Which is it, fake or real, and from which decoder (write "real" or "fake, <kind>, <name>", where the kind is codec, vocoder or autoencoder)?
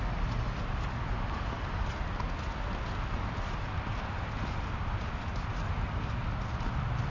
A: real